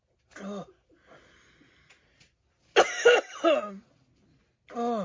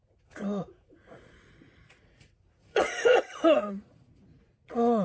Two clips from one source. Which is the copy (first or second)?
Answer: second